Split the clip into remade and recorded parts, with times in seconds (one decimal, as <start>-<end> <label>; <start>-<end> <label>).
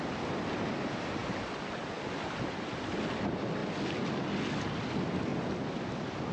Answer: 0.0-6.3 recorded